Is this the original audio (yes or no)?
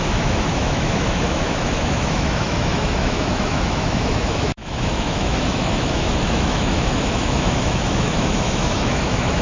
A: no